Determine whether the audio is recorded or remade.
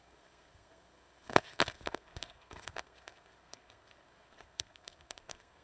remade